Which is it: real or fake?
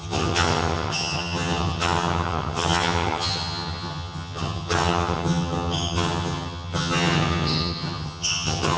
fake